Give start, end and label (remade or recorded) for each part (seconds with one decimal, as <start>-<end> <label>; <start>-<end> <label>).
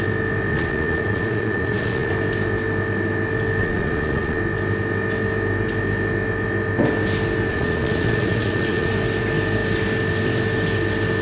0.0-0.5 recorded; 0.5-2.1 remade; 2.1-3.6 recorded; 3.6-4.4 remade; 4.4-7.5 recorded; 7.5-8.9 remade; 8.9-11.2 recorded